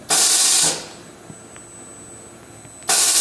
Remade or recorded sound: recorded